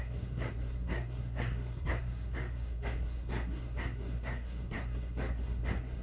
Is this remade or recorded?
remade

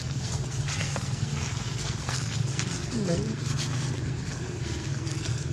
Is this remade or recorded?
remade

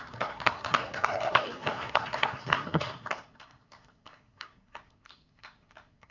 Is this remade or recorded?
remade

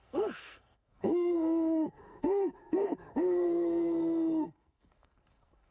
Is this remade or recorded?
remade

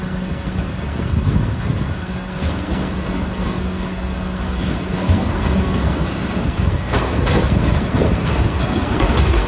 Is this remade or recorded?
remade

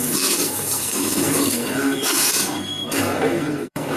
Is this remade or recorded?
remade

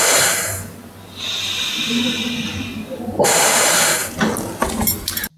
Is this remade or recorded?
recorded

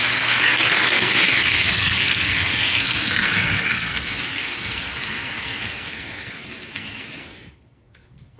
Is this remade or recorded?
remade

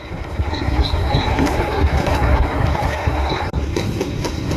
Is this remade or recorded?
remade